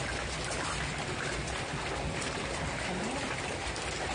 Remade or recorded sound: recorded